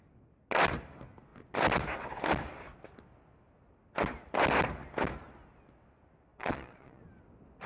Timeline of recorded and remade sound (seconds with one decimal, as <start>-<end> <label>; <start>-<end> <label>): 0.0-6.3 recorded; 6.3-7.0 remade; 7.0-7.7 recorded